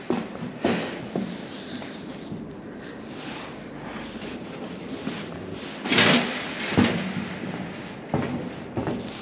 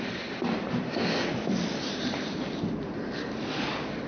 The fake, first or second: first